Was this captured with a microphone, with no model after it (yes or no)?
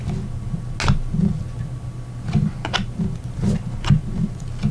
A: yes